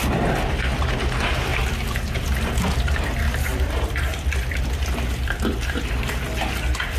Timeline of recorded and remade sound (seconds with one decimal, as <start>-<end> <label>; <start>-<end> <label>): 0.0-1.5 recorded; 1.5-5.7 remade; 5.7-7.0 recorded